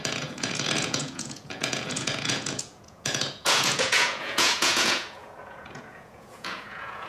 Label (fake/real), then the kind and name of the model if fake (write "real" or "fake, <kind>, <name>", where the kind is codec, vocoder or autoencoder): fake, vocoder, Vocos